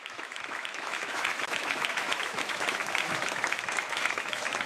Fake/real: fake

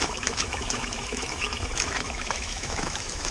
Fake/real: fake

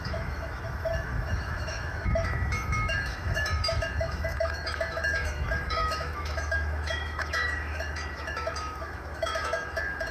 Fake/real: fake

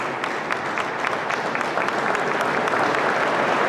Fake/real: real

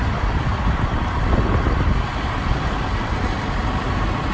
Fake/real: real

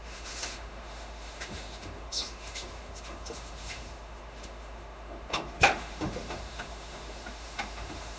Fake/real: fake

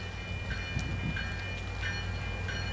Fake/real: real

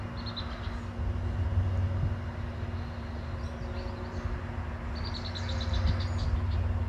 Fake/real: real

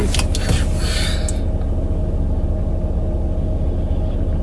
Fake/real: real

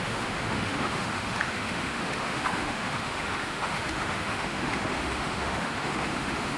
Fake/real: fake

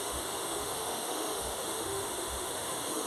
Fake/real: fake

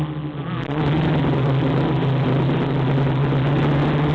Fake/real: real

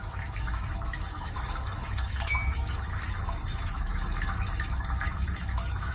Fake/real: fake